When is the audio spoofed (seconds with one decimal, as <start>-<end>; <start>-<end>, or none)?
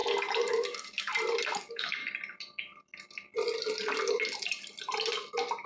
0.5-1.1; 1.6-2.0